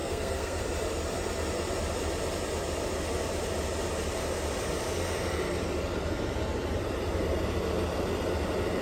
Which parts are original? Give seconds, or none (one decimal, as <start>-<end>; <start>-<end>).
0.6-8.8